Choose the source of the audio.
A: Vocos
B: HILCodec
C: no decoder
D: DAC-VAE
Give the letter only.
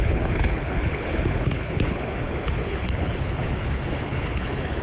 B